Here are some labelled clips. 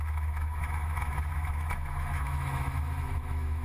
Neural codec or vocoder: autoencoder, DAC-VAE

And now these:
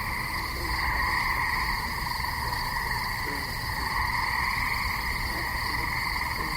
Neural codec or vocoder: none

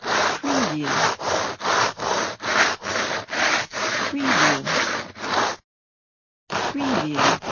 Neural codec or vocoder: none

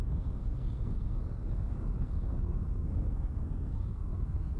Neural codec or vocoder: codec, SNAC